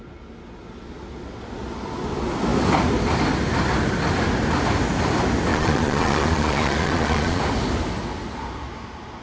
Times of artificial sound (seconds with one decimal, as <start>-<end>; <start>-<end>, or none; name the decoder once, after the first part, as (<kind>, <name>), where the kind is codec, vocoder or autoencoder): 5.5-7.4 (vocoder, Vocos)

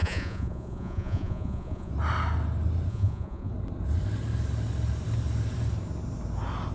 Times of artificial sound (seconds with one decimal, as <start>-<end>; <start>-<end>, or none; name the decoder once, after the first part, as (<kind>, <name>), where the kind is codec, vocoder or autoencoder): 0.0-1.9 (vocoder, Vocos); 2.9-3.5

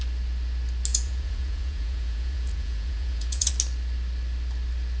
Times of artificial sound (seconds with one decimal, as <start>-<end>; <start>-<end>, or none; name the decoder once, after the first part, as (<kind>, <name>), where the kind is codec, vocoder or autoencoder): 0.9-3.5 (vocoder, Vocos)

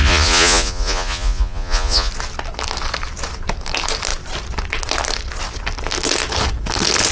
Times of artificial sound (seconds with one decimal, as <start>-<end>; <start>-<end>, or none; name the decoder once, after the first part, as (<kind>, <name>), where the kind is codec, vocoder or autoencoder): 0.0-2.1 (vocoder, Vocos)